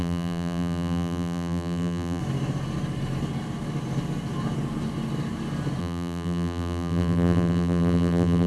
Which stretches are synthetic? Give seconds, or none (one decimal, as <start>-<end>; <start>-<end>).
0.0-2.2; 5.8-8.5